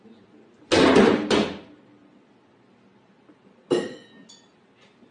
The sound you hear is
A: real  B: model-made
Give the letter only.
A